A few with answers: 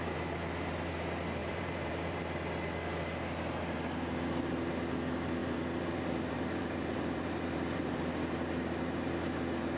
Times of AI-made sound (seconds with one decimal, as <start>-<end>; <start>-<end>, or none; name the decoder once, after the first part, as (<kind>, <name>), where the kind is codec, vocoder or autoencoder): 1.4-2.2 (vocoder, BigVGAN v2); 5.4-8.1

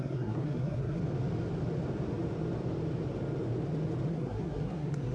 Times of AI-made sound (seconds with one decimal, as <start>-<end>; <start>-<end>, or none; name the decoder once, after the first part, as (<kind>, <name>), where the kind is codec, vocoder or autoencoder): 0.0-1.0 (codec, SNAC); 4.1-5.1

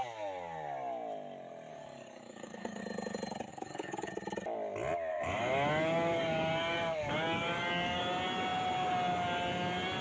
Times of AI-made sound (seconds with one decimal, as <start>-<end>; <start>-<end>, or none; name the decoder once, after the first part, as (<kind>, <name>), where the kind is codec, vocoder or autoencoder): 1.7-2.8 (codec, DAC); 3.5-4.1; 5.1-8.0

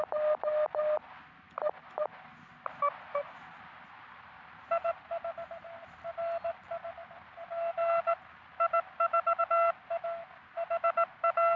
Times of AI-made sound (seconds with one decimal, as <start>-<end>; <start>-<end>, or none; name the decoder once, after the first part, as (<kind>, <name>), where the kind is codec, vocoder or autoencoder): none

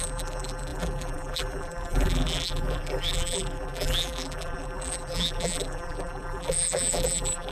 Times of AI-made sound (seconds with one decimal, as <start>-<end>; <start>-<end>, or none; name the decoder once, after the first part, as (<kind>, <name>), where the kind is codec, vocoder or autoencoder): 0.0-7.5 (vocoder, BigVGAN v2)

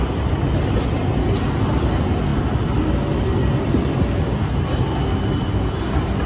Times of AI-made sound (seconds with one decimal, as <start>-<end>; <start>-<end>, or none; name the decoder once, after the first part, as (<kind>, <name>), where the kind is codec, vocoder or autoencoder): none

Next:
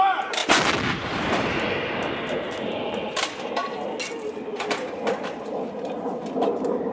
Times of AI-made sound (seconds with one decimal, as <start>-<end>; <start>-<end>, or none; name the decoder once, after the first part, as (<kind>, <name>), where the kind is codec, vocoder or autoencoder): none